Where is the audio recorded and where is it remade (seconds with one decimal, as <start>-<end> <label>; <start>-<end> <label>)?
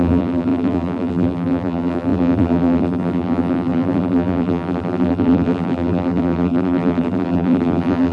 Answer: 0.0-8.1 remade